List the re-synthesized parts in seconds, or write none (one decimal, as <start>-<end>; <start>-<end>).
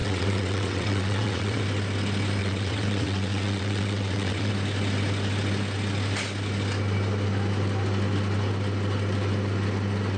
0.0-1.6; 2.4-4.5